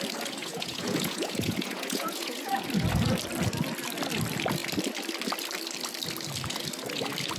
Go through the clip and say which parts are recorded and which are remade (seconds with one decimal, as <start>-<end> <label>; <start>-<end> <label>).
0.0-0.4 recorded; 0.4-2.5 remade; 2.5-7.4 recorded